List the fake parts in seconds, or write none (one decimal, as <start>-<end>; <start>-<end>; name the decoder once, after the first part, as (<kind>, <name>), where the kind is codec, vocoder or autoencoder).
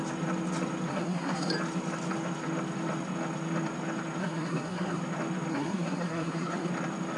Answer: 0.9-1.5 (codec, SNAC); 4.2-5.0; 5.5-6.7